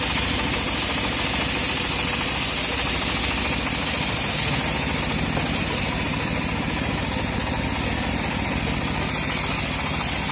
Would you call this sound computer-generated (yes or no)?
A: no